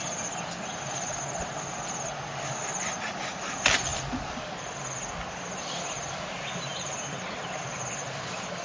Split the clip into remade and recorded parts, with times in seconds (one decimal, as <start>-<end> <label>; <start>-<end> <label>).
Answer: 0.0-8.6 recorded